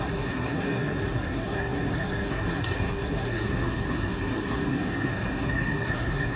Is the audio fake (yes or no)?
yes